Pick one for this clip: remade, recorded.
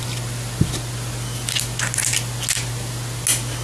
recorded